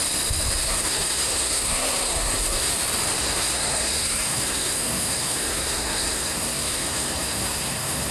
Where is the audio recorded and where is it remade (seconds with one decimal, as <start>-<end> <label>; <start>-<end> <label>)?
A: 0.0-0.6 recorded; 0.6-2.7 remade; 2.7-3.2 recorded; 3.2-8.1 remade